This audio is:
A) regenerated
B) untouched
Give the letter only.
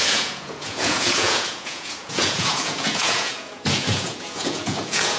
A